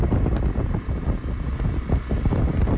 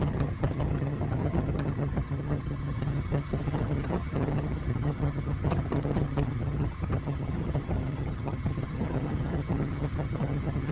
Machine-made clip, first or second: second